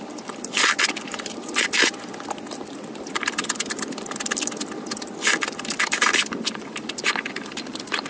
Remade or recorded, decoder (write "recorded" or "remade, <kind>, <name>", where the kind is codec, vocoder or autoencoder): remade, vocoder, BigVGAN v2